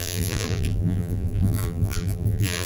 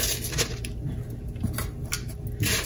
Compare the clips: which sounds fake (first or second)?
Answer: first